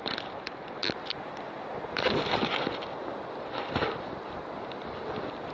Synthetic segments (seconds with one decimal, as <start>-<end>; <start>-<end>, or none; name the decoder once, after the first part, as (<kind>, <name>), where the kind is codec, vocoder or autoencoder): none